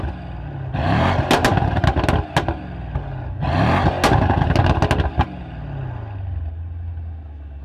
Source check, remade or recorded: recorded